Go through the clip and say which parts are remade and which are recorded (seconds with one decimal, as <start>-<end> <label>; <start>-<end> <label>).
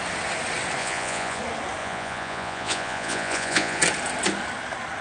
0.0-0.8 recorded; 0.8-1.4 remade; 1.4-1.8 recorded; 1.8-3.8 remade; 3.8-5.0 recorded